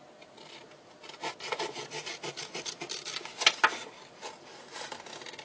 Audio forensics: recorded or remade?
recorded